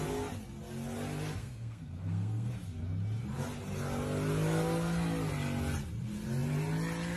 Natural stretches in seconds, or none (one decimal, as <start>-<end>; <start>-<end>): 0.0-1.4; 2.5-7.2